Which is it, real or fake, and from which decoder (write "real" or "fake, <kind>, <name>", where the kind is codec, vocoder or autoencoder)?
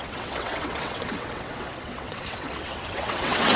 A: fake, vocoder, WaveNeXt